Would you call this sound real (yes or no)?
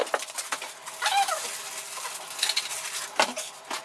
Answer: yes